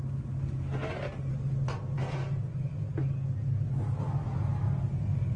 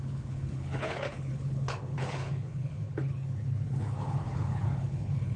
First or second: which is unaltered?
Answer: first